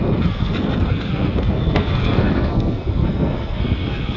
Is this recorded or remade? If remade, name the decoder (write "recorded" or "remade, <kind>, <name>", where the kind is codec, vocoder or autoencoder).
remade, codec, SNAC